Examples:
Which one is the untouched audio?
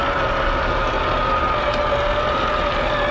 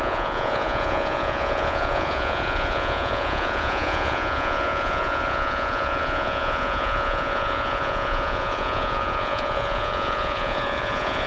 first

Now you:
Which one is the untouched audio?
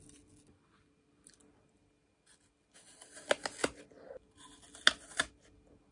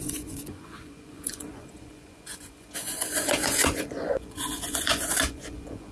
first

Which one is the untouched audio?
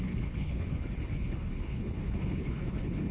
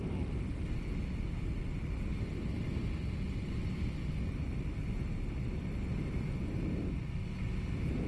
second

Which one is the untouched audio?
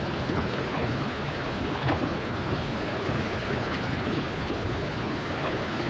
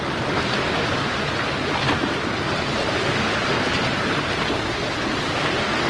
second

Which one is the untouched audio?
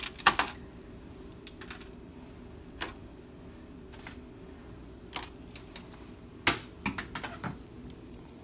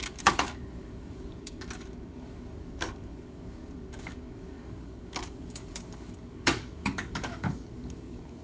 first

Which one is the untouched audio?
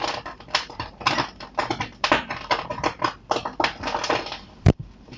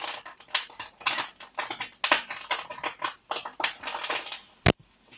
second